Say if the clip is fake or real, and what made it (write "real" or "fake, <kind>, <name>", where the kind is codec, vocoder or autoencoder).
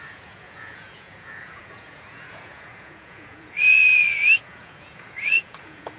fake, vocoder, Vocos